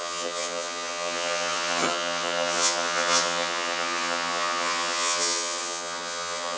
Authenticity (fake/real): fake